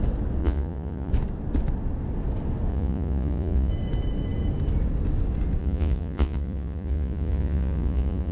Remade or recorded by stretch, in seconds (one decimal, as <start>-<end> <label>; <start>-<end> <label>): 0.0-0.4 recorded; 0.4-1.1 remade; 1.1-2.7 recorded; 2.7-3.7 remade; 3.7-5.6 recorded; 5.6-8.3 remade